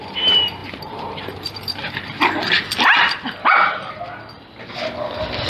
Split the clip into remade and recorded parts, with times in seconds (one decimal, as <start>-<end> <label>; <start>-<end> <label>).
0.0-0.6 recorded; 0.6-3.9 remade; 3.9-5.5 recorded